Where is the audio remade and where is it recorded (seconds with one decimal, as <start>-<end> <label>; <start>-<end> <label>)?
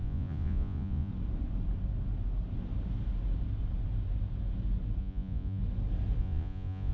0.0-1.1 remade; 1.1-5.0 recorded; 5.0-5.6 remade; 5.6-6.2 recorded; 6.2-6.9 remade